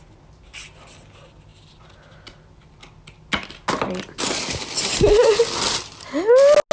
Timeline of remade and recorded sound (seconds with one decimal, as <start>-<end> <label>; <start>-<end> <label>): 0.0-6.7 recorded